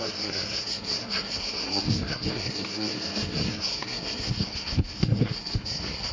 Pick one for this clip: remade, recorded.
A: remade